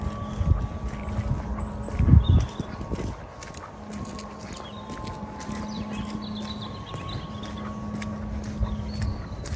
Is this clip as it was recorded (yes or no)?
yes